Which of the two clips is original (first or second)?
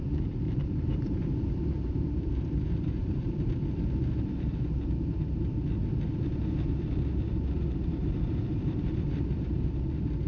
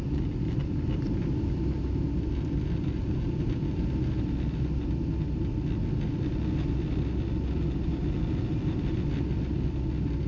second